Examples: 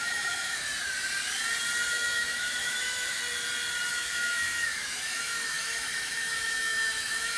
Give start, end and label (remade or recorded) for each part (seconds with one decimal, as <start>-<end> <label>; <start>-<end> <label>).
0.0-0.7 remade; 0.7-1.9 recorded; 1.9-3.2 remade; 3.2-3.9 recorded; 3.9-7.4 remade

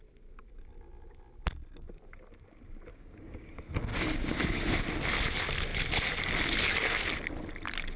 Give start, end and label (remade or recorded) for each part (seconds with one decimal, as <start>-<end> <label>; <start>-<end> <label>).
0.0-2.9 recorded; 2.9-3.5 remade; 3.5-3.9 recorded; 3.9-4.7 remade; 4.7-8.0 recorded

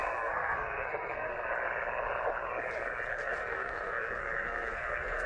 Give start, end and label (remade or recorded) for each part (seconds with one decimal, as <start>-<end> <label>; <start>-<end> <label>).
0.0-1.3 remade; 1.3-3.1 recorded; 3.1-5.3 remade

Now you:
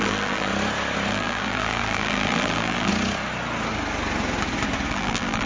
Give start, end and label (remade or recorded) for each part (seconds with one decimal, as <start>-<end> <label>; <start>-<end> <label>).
0.0-0.5 remade; 0.5-1.1 recorded; 1.1-2.9 remade; 2.9-4.9 recorded; 4.9-5.5 remade